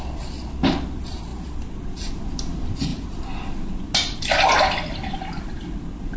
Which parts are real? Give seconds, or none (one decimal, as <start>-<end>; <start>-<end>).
0.0-6.2